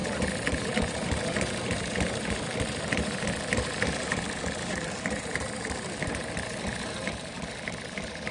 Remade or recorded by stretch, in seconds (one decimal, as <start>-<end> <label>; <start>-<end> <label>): 0.0-8.3 remade